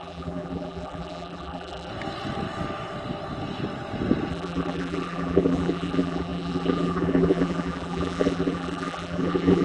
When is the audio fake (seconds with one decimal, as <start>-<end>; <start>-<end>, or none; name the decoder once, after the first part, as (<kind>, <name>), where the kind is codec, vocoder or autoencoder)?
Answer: 0.0-1.9 (vocoder, BigVGAN v2); 4.3-9.6